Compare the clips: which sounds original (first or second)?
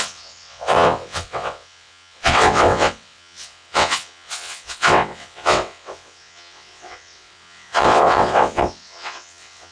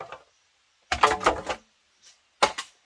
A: second